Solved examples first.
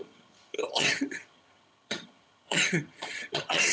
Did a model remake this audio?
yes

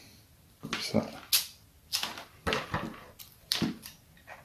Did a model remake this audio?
no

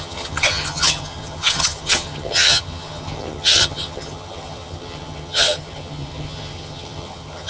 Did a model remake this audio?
yes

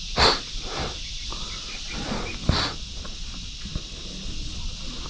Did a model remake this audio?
no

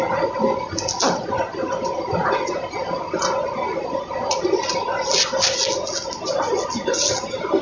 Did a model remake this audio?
no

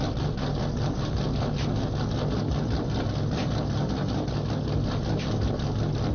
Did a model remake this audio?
no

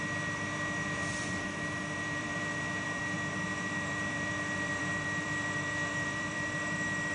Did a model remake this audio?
yes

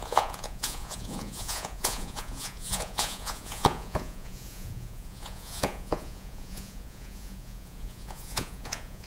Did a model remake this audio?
yes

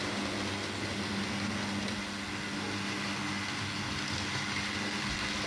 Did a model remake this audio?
no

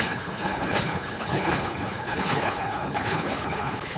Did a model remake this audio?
yes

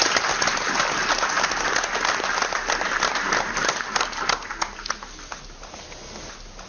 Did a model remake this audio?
no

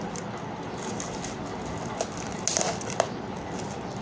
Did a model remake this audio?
no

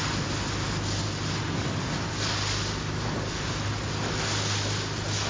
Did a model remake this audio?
no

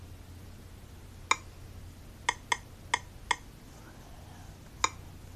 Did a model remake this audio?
no